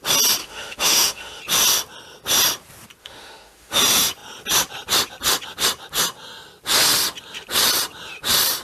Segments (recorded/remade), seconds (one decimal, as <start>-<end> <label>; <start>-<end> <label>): 0.0-0.4 recorded; 0.4-1.4 remade; 1.4-3.0 recorded; 3.0-3.8 remade; 3.8-8.6 recorded